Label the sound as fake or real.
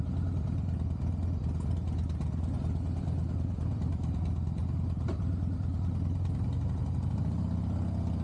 real